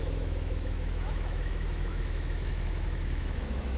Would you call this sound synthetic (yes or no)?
yes